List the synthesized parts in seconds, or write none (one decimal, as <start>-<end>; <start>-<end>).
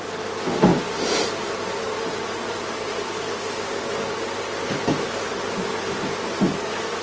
none